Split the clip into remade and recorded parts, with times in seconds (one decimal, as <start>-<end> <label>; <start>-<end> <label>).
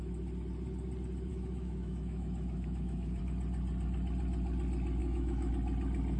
0.0-1.3 recorded; 1.3-3.2 remade; 3.2-5.0 recorded; 5.0-5.5 remade; 5.5-6.2 recorded